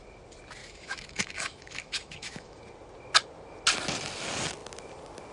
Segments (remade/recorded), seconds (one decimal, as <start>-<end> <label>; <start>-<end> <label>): 0.0-0.6 recorded; 0.6-2.6 remade; 2.6-5.3 recorded